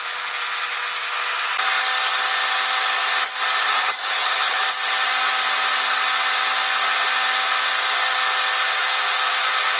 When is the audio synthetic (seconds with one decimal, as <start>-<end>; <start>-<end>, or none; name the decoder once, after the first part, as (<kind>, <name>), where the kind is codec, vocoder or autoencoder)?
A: 3.6-4.6 (vocoder, HiFi-GAN)